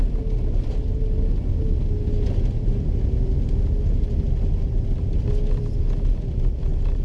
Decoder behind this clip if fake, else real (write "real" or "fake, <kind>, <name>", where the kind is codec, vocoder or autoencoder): real